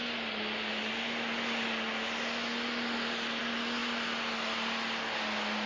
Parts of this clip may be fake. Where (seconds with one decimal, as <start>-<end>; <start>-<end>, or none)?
none